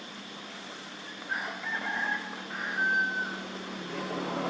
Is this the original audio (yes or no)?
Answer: yes